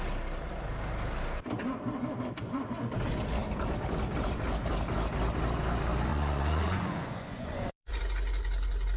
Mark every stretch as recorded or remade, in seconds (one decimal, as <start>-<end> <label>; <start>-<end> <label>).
0.0-6.1 recorded; 6.1-8.0 remade; 8.0-9.0 recorded